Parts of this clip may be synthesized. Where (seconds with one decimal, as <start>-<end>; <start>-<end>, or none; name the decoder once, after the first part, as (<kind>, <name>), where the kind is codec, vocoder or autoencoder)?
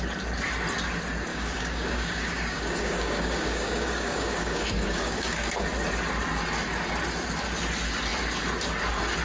1.3-5.5 (codec, DAC)